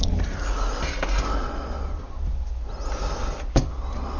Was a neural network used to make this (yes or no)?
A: no